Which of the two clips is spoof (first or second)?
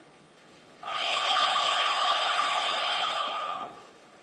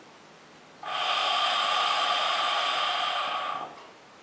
first